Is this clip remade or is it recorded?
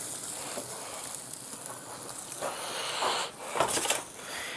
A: recorded